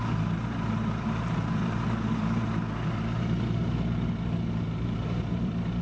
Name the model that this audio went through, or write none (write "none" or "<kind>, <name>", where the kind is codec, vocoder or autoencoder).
vocoder, BigVGAN v2